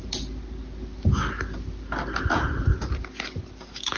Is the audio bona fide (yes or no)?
yes